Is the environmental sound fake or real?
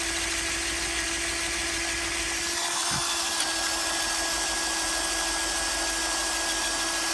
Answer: real